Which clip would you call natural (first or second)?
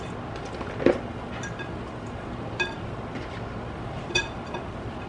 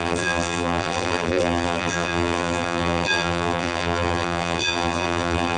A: first